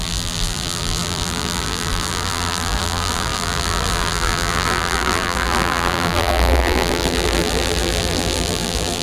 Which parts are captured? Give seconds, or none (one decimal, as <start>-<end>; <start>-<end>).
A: none